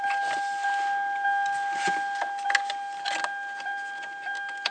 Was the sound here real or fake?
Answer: real